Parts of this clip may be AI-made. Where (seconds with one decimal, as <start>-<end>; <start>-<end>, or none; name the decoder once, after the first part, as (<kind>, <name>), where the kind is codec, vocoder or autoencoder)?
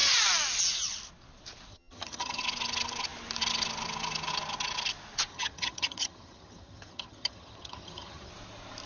1.7-2.4 (vocoder, HiFi-GAN); 5.3-8.3